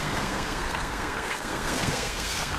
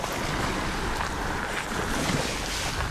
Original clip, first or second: second